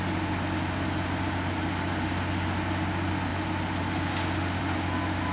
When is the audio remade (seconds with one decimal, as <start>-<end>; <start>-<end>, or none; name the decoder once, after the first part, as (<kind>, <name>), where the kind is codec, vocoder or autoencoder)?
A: none